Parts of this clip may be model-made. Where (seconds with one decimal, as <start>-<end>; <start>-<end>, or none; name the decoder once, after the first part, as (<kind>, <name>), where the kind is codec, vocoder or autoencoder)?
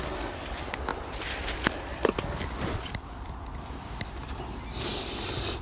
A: 0.9-3.9 (vocoder, BigVGAN v2)